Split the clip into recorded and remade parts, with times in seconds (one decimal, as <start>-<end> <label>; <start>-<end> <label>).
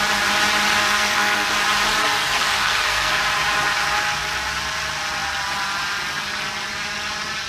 0.0-0.8 recorded; 0.8-1.5 remade; 1.5-2.0 recorded; 2.0-3.2 remade; 3.2-7.5 recorded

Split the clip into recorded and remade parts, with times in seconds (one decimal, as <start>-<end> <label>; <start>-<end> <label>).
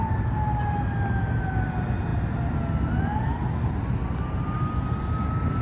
0.0-5.6 recorded